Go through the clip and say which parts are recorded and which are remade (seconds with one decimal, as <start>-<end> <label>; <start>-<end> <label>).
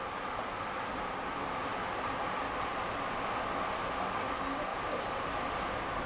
0.0-4.7 recorded; 4.7-5.6 remade; 5.6-6.1 recorded